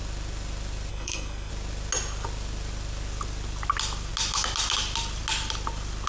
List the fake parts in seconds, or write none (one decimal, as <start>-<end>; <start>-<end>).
0.9-1.5